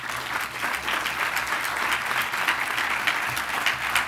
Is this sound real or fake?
real